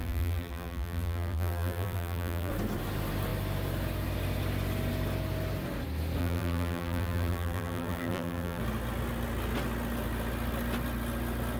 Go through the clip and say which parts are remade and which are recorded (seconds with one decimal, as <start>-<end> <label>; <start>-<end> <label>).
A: 0.0-2.5 remade; 2.5-6.2 recorded; 6.2-8.6 remade; 8.6-11.6 recorded